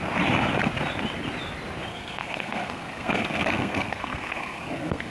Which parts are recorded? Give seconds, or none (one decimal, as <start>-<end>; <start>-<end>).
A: 0.0-1.9